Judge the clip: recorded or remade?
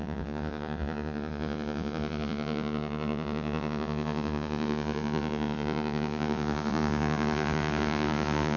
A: remade